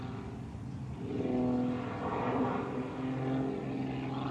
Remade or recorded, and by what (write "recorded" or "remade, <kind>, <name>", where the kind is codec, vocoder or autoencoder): recorded